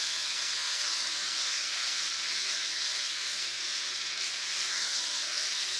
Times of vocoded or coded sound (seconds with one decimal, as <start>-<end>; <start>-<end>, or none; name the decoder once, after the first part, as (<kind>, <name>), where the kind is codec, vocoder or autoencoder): 0.0-5.8 (codec, SNAC)